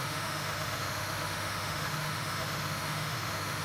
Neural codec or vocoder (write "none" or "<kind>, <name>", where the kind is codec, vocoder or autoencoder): autoencoder, DAC-VAE